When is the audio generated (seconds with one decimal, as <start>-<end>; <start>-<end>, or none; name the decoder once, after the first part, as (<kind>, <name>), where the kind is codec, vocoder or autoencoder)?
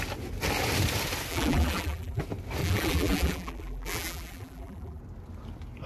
1.3-2.2 (vocoder, BigVGAN v2); 2.6-5.0